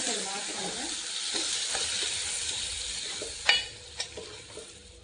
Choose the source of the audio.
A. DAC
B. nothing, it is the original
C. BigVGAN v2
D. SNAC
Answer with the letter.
B